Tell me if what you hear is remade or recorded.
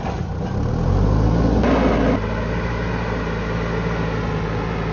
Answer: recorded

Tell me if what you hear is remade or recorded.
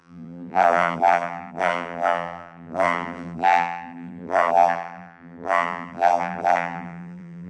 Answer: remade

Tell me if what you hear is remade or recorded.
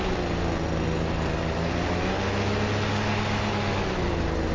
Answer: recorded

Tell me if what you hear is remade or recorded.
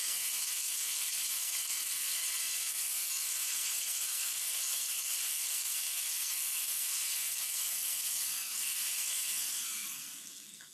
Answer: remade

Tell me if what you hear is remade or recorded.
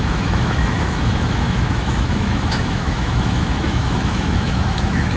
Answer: remade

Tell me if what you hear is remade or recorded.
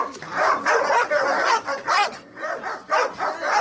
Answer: recorded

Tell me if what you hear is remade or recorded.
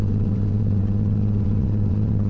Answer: remade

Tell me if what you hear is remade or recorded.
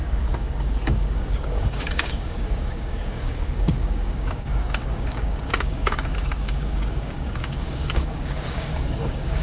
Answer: remade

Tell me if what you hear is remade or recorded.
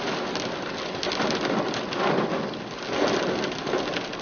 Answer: recorded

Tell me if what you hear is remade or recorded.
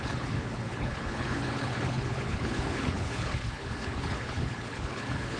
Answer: remade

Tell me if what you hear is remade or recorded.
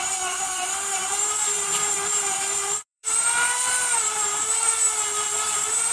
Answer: remade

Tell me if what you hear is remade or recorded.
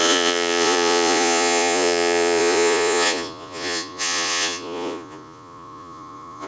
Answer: remade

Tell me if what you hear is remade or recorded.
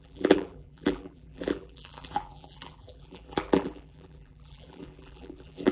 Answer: remade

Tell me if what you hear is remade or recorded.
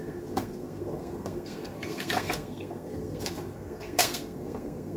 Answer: remade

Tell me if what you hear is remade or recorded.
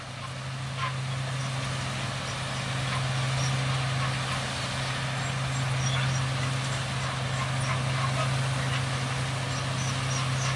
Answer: recorded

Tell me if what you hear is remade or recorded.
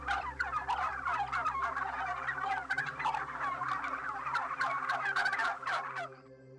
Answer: remade